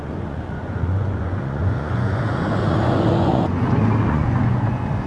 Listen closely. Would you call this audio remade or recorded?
remade